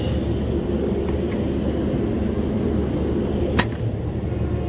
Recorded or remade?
recorded